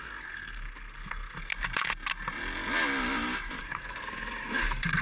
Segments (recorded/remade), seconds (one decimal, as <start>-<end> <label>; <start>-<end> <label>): 0.0-1.5 remade; 1.5-3.6 recorded; 3.6-5.0 remade